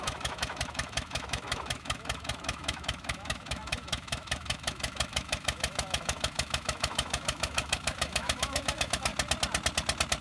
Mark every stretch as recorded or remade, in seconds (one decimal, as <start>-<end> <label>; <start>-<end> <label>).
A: 0.0-9.1 remade; 9.1-10.2 recorded